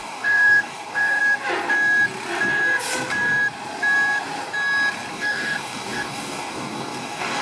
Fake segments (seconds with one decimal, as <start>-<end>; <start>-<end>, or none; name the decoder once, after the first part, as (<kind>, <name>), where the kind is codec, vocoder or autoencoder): 0.0-1.2 (codec, DAC); 5.1-7.4